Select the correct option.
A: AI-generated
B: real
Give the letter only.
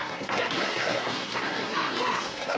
A